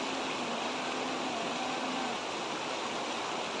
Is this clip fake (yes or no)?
no